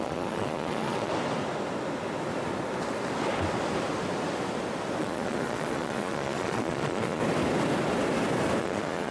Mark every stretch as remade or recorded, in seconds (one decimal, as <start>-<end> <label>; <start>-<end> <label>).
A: 0.0-1.1 remade; 1.1-5.0 recorded; 5.0-7.2 remade; 7.2-8.6 recorded; 8.6-9.1 remade